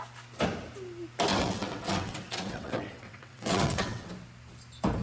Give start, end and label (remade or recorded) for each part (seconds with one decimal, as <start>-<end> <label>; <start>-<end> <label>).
0.0-1.3 recorded; 1.3-4.1 remade; 4.1-5.0 recorded